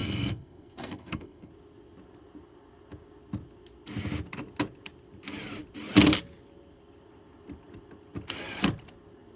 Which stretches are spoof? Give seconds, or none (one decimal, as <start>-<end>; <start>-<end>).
0.0-1.5